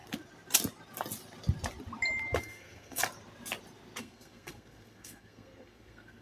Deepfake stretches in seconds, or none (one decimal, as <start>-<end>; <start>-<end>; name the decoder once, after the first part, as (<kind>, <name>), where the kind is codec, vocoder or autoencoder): 2.4-3.0 (codec, SNAC); 4.0-6.2